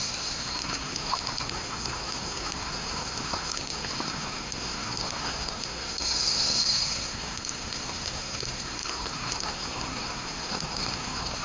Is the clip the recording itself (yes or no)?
no